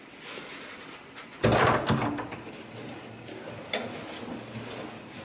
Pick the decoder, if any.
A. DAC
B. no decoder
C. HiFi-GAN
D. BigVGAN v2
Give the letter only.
B